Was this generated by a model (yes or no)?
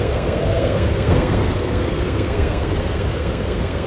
yes